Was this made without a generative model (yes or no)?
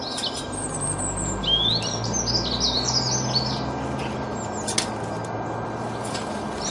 yes